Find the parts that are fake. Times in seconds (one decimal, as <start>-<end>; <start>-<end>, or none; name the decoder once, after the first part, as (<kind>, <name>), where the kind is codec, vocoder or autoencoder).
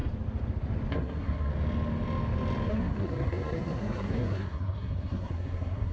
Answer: 0.9-1.5 (codec, SNAC); 2.7-5.9